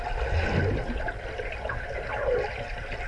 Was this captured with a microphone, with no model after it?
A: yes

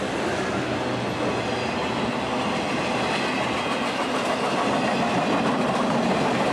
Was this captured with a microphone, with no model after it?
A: yes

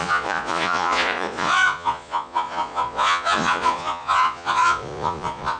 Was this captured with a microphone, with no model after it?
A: no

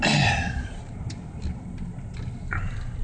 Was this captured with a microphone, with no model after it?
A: yes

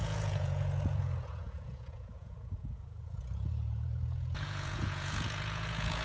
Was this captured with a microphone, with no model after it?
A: no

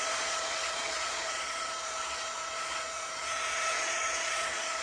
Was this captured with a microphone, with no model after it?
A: no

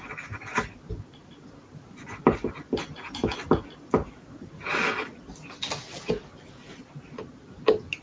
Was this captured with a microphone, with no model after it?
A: yes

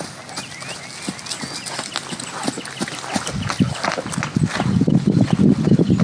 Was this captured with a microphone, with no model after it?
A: yes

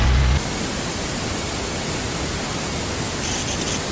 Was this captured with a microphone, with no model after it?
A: yes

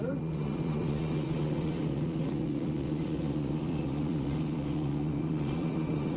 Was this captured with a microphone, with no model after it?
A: no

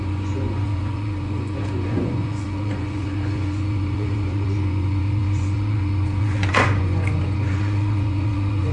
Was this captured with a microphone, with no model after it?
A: no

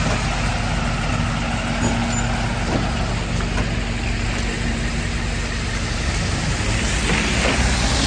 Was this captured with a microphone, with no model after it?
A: yes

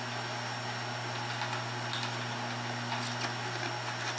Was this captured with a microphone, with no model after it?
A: yes